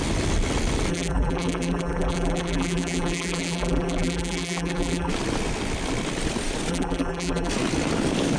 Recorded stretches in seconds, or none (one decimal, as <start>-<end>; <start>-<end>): 0.0-0.9; 5.1-6.7; 7.5-8.4